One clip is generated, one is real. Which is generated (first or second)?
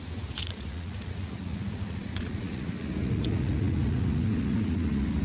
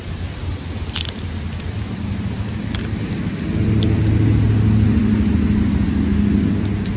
first